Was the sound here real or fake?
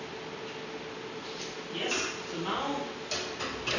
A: real